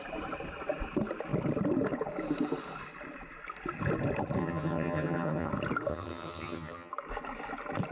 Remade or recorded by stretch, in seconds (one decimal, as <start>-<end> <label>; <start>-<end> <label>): 0.0-4.4 recorded; 4.4-5.5 remade; 5.5-5.9 recorded; 5.9-6.9 remade; 6.9-7.9 recorded